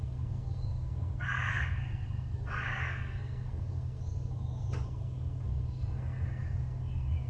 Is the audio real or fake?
fake